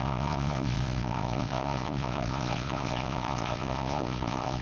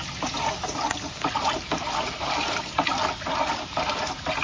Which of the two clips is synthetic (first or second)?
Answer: first